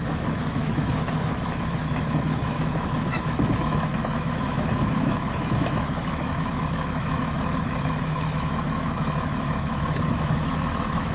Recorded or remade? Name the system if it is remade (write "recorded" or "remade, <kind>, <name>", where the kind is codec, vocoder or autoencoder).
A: remade, autoencoder, DAC-VAE